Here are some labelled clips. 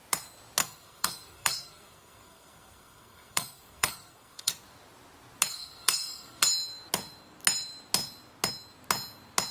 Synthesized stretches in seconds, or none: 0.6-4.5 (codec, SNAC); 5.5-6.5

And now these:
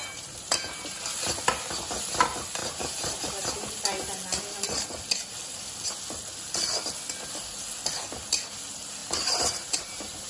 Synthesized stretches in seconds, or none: 0.0-1.0 (vocoder, BigVGAN v2); 2.6-3.7; 9.0-10.3

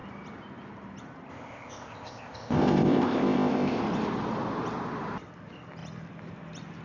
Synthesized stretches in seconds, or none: 1.3-3.8 (codec, ZipCodec)

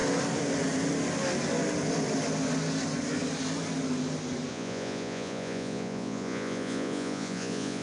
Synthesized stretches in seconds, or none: 4.5-7.8 (vocoder, Vocos)

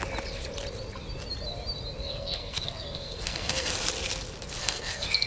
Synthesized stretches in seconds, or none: 2.0-3.7 (codec, SNAC); 4.6-5.3

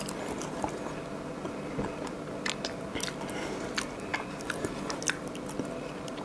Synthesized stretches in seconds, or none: none

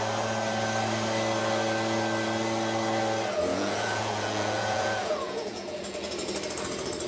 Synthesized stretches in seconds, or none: 3.5-6.1 (vocoder, Vocos)